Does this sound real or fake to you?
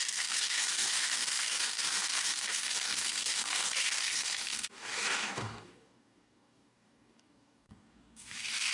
fake